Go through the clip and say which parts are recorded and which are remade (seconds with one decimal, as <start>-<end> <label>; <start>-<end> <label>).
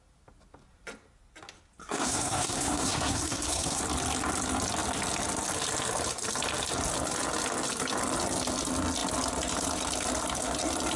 0.0-1.8 recorded; 1.8-3.8 remade; 3.8-11.0 recorded